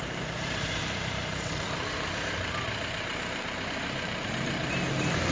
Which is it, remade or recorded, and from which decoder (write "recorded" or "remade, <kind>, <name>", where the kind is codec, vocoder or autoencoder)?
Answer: remade, vocoder, BigVGAN v2